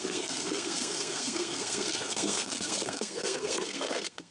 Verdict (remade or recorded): remade